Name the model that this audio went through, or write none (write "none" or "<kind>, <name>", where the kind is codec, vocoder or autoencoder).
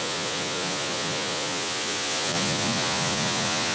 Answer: vocoder, Vocos